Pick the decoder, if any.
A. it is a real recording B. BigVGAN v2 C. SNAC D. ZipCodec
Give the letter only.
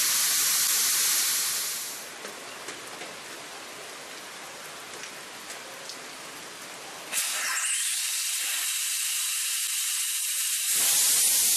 A